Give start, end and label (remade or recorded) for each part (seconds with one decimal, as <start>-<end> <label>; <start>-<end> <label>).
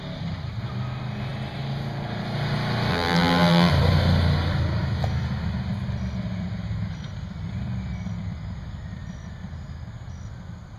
0.0-2.9 recorded; 2.9-3.7 remade; 3.7-10.8 recorded